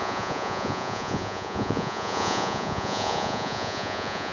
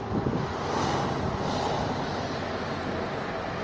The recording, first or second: second